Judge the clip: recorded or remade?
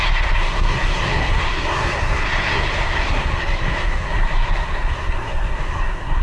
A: remade